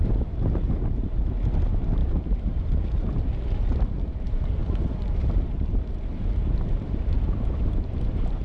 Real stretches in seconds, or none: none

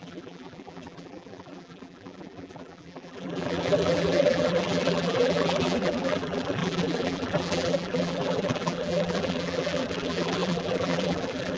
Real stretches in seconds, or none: none

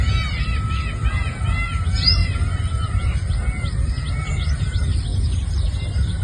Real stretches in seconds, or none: 0.0-2.2; 3.3-6.2

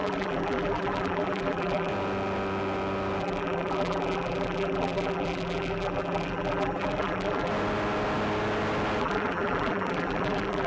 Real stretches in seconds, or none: 1.9-3.2; 7.5-9.0

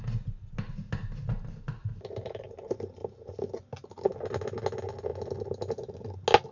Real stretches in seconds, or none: 0.0-1.8; 2.6-3.0; 3.7-6.5